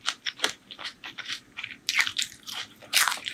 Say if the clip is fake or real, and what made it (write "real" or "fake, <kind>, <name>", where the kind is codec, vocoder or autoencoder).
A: fake, vocoder, BigVGAN v2